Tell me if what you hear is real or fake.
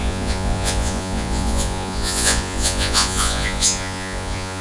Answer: fake